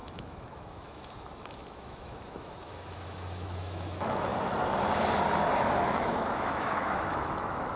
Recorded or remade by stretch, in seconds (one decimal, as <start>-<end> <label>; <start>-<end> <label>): 0.0-4.3 remade; 4.3-5.8 recorded; 5.8-7.8 remade